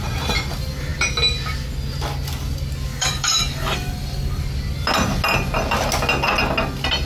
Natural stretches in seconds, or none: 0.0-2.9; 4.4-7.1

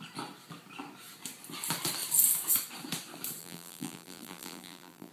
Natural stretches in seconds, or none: 0.0-3.4

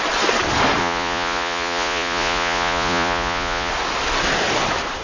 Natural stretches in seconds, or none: 0.0-0.8; 3.7-5.0